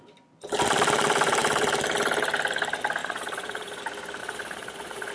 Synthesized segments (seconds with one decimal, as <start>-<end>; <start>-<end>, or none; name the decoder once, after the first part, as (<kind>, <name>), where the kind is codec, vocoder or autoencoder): 3.0-3.8 (vocoder, Vocos); 4.2-5.1